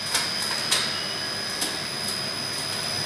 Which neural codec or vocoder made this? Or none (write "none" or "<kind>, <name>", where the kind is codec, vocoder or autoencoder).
none